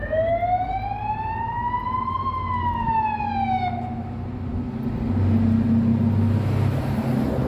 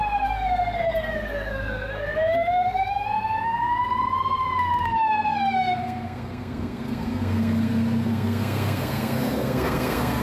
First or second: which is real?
first